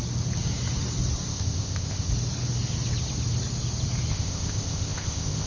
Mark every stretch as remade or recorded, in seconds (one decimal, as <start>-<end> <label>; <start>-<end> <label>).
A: 0.0-1.3 recorded; 1.3-2.1 remade; 2.1-4.1 recorded; 4.1-5.5 remade